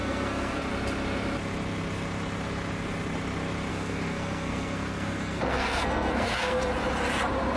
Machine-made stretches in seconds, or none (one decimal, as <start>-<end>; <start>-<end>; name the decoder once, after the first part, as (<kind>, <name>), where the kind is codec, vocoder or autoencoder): 0.0-0.7 (codec, SNAC); 3.7-6.7